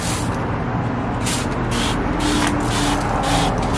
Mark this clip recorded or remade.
recorded